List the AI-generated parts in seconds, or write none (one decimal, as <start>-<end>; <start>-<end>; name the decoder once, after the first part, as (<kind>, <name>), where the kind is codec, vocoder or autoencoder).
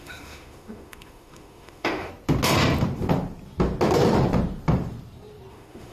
0.0-2.1 (autoencoder, DAC-VAE); 5.5-5.9